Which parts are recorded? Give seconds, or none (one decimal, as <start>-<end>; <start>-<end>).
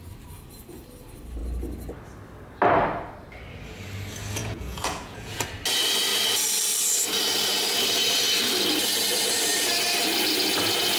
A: 0.0-4.4; 5.4-11.0